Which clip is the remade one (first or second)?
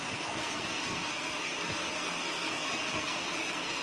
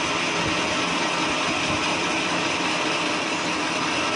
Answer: first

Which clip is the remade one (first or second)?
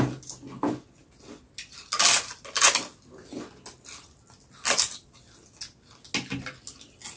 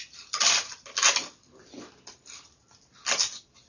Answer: second